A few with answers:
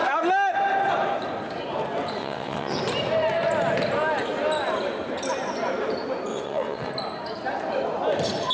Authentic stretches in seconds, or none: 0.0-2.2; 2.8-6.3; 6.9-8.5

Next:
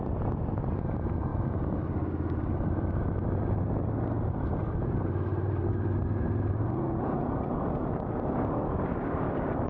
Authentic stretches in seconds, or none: 0.0-9.7

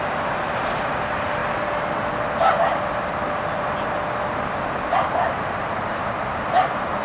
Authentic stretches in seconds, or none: 0.0-7.0

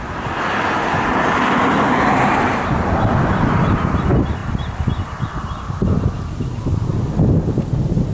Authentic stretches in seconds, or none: 0.0-8.1

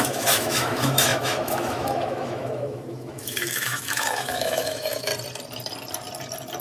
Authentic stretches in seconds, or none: 5.1-6.6

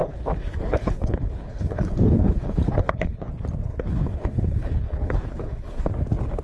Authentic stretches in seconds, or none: 3.3-3.7; 5.9-6.4